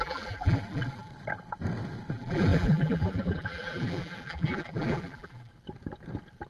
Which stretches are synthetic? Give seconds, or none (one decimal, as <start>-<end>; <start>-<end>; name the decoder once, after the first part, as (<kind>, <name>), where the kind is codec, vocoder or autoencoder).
0.0-1.1 (vocoder, BigVGAN v2); 2.1-5.5